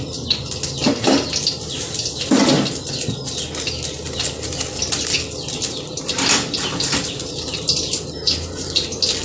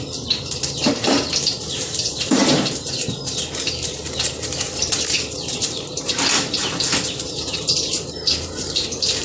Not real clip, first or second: second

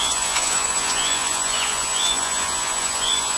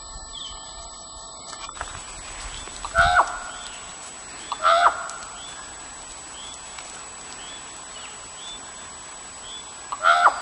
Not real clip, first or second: first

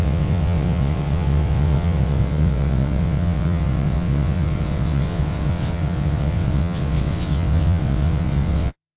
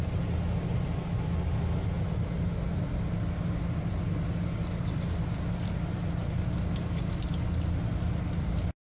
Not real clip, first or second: first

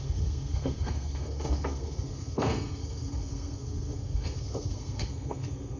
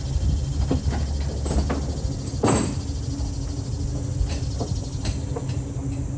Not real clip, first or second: first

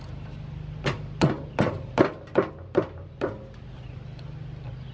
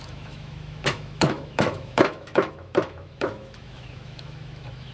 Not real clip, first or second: second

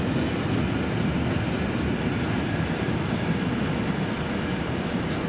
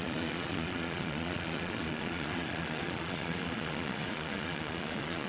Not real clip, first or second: second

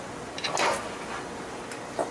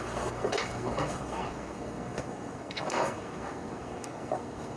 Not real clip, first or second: second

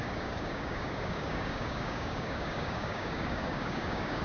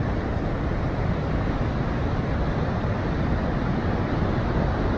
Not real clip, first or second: first